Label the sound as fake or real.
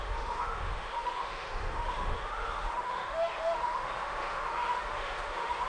fake